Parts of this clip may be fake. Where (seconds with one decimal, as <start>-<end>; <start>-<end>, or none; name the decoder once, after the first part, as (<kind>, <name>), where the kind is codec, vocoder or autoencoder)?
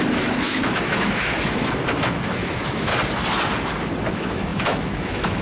0.0-2.9 (autoencoder, DAC-VAE); 4.1-5.4